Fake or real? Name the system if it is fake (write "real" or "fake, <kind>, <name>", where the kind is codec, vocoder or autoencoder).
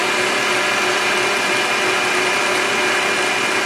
real